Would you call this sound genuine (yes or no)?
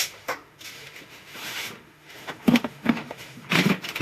no